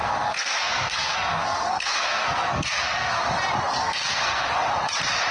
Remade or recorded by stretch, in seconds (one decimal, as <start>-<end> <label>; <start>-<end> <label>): 0.0-3.2 remade; 3.2-3.8 recorded; 3.8-4.5 remade; 4.5-5.3 recorded